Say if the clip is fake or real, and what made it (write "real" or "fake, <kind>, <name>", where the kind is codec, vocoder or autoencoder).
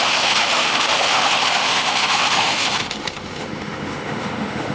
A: fake, autoencoder, DAC-VAE